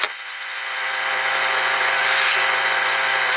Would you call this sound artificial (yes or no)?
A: yes